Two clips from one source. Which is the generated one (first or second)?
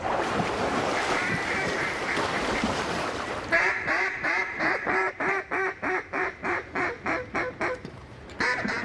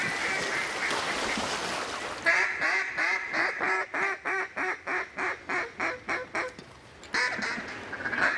first